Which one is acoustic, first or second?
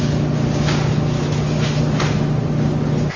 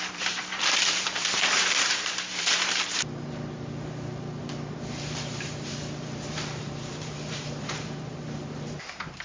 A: first